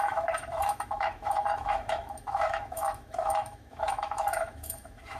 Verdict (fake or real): fake